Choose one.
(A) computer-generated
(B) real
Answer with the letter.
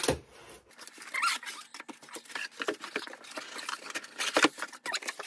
B